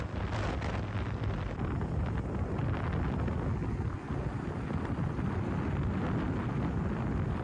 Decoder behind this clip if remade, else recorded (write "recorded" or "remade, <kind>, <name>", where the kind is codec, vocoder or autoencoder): recorded